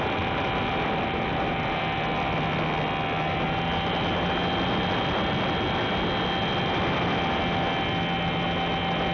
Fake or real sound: real